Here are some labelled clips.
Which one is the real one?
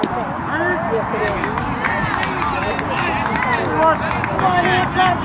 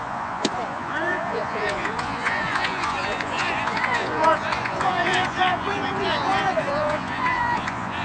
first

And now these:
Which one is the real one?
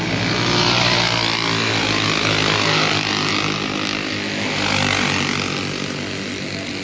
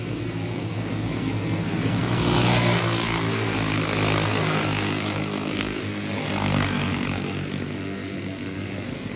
first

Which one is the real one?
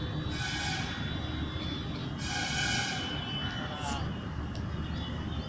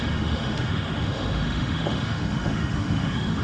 first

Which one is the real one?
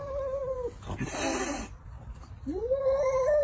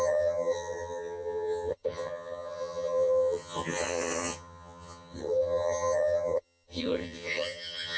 first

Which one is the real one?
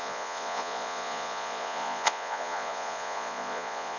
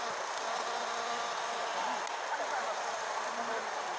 second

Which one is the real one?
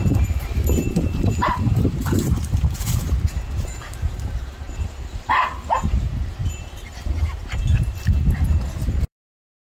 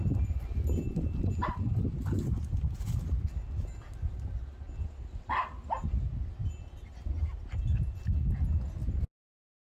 second